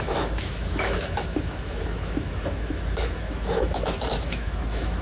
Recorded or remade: remade